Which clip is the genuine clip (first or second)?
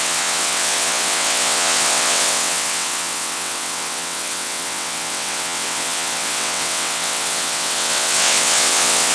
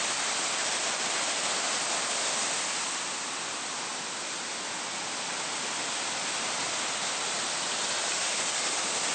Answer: second